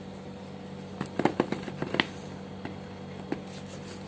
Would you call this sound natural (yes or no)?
yes